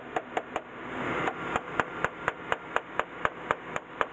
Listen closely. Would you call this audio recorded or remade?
recorded